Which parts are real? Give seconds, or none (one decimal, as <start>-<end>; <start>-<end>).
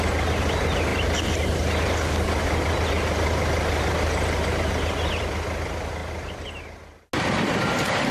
0.0-8.1